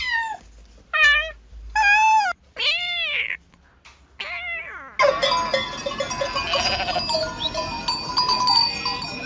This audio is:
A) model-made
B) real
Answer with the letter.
B